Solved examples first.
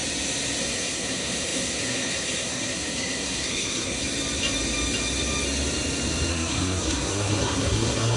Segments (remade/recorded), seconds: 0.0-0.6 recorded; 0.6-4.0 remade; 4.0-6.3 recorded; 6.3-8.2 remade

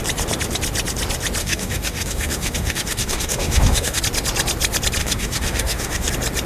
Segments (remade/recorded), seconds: 0.0-1.4 recorded; 1.4-4.0 remade; 4.0-5.0 recorded; 5.0-6.1 remade; 6.1-6.5 recorded

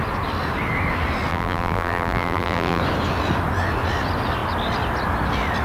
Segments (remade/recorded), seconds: 0.0-1.3 recorded; 1.3-2.8 remade; 2.8-5.6 recorded